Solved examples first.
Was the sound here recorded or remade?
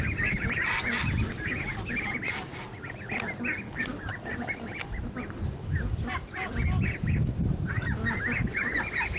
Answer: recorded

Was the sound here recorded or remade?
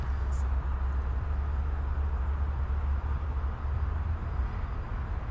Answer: recorded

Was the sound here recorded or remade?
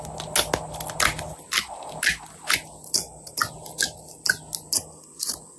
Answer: recorded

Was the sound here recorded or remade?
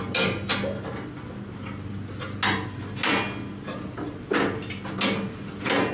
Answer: recorded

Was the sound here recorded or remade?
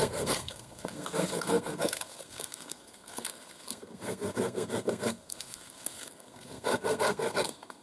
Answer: remade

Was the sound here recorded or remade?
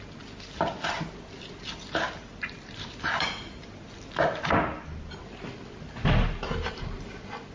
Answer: recorded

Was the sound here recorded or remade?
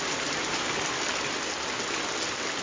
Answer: recorded